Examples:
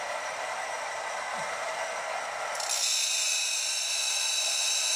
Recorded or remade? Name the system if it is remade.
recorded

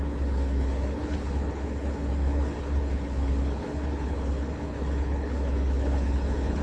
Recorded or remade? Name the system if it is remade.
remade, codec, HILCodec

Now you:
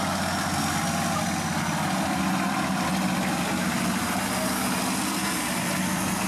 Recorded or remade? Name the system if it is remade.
recorded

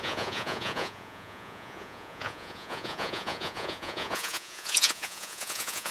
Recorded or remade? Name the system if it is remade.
remade, vocoder, Vocos